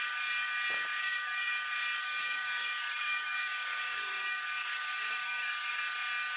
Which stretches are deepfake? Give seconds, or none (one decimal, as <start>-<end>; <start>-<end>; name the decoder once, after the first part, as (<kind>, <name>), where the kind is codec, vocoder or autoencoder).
1.0-1.5 (codec, DAC); 2.0-5.8

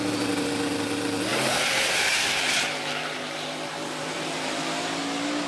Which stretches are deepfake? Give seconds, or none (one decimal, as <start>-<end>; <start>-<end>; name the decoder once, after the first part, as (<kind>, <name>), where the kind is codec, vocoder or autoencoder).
1.3-4.6 (vocoder, BigVGAN v2)

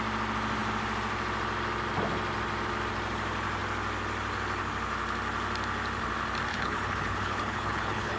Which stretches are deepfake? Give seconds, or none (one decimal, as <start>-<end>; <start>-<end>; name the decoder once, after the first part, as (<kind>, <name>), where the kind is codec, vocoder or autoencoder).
6.5-8.2 (codec, HILCodec)

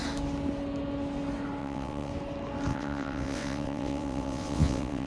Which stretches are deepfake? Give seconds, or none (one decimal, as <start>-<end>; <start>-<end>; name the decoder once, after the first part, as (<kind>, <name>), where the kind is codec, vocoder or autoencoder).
1.6-2.1 (vocoder, WaveNeXt); 2.7-5.1

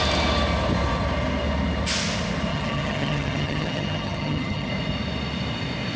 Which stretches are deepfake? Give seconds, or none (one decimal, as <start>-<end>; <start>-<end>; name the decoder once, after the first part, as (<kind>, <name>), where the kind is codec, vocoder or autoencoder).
2.5-4.7 (vocoder, HiFi-GAN)